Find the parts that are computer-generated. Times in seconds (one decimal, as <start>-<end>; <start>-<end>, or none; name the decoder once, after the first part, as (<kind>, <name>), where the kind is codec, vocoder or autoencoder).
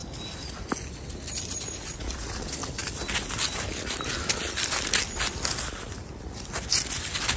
none